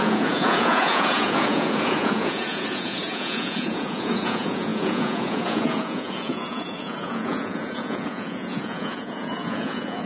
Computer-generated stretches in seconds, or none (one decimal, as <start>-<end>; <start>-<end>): 0.0-10.1